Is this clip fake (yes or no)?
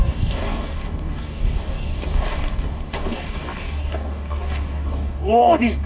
yes